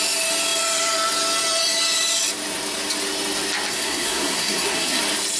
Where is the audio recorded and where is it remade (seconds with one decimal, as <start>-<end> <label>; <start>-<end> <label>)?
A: 0.0-3.7 recorded; 3.7-5.0 remade; 5.0-5.4 recorded